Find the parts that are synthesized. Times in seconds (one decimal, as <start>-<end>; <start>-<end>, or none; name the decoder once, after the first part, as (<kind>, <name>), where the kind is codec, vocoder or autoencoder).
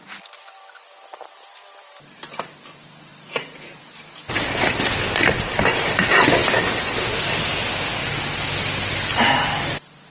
none